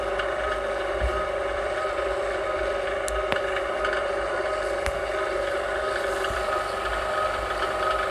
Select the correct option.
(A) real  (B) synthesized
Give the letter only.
B